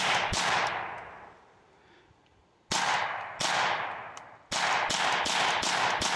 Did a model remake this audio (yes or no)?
no